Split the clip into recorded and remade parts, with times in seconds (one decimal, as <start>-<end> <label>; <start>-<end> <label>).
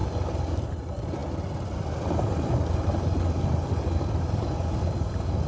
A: 0.0-5.5 recorded